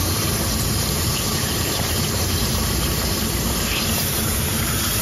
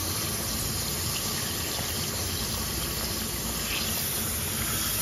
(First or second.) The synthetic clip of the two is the first